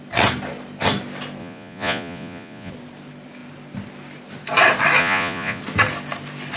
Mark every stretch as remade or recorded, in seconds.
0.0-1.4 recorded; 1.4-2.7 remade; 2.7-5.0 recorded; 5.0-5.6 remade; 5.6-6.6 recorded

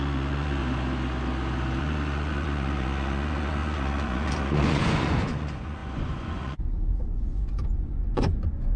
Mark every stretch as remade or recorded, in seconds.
0.0-0.6 remade; 0.6-1.8 recorded; 1.8-8.8 remade

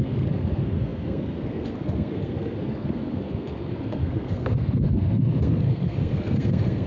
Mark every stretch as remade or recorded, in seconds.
0.0-6.9 remade

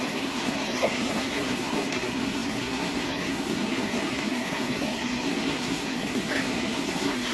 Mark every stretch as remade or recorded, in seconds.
0.0-7.3 remade

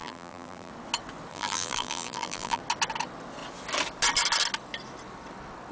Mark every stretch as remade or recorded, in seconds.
0.0-0.7 remade; 0.7-1.3 recorded; 1.3-2.6 remade; 2.6-5.7 recorded

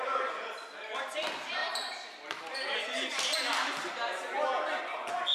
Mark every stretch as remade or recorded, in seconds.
0.0-5.3 recorded